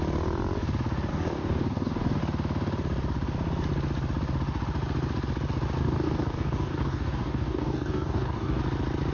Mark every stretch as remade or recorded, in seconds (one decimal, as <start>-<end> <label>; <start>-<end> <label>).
0.0-1.1 recorded; 1.1-2.2 remade; 2.2-5.8 recorded; 5.8-8.6 remade; 8.6-9.1 recorded